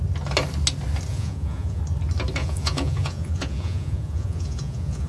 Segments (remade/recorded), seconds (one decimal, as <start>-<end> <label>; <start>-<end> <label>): 0.0-1.1 recorded; 1.1-1.8 remade; 1.8-2.4 recorded; 2.4-5.1 remade